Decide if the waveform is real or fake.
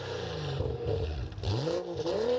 fake